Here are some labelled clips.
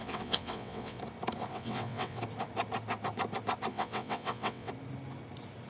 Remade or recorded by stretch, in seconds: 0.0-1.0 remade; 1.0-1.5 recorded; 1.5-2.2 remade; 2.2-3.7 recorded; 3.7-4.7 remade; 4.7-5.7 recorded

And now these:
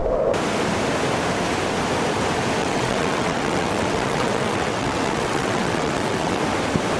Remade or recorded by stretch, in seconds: 0.0-2.6 recorded; 2.6-6.4 remade; 6.4-7.0 recorded

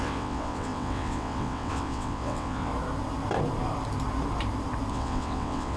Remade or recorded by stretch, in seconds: 0.0-2.7 remade; 2.7-4.9 recorded; 4.9-5.8 remade

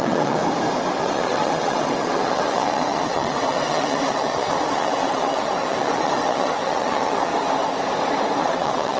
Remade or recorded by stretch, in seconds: 0.0-0.4 remade; 0.4-1.0 recorded; 1.0-7.3 remade; 7.3-8.4 recorded; 8.4-9.0 remade

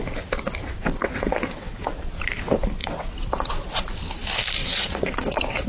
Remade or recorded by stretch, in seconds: 0.0-0.8 recorded; 0.8-1.9 remade; 1.9-2.8 recorded; 2.8-3.5 remade; 3.5-4.6 recorded; 4.6-5.7 remade

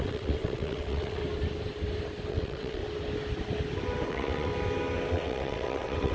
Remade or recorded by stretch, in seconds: 0.0-1.2 remade; 1.2-2.3 recorded; 2.3-2.8 remade; 2.8-4.1 recorded; 4.1-4.5 remade; 4.5-5.1 recorded; 5.1-6.1 remade

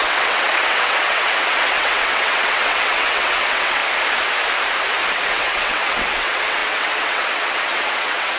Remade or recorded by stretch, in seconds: 0.0-3.8 remade; 3.8-5.1 recorded; 5.1-8.4 remade

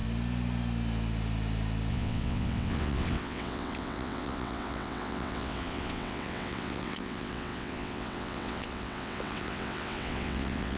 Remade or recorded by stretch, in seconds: 0.0-1.9 recorded; 1.9-10.8 remade